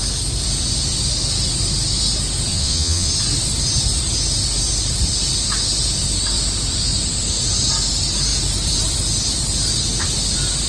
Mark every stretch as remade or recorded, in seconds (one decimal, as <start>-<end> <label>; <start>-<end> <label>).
0.0-2.5 recorded; 2.5-3.1 remade; 3.1-10.7 recorded